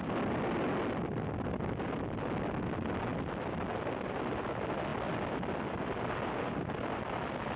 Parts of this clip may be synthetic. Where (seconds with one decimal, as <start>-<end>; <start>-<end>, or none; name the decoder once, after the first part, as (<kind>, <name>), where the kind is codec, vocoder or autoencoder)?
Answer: none